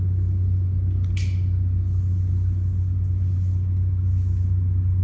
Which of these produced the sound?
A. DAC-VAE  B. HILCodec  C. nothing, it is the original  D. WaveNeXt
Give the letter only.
C